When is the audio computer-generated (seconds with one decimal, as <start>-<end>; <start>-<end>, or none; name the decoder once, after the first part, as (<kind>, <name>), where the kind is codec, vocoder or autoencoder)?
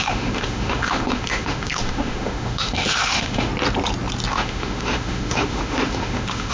0.0-3.5 (autoencoder, DAC-VAE); 4.3-6.5